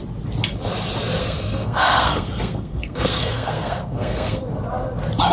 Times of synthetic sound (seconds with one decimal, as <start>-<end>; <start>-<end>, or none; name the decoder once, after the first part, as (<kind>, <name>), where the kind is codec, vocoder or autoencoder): 1.2-4.4 (codec, SNAC)